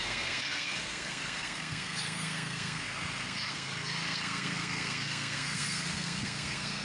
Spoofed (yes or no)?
yes